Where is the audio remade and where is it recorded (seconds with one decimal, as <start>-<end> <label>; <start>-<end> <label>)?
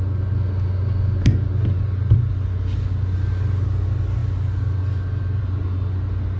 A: 0.0-6.4 recorded